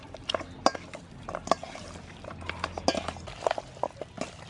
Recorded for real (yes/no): yes